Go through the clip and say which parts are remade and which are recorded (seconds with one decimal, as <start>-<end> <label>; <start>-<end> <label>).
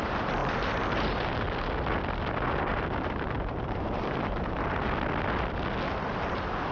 0.0-0.4 recorded; 0.4-1.3 remade; 1.3-2.7 recorded; 2.7-4.9 remade; 4.9-6.7 recorded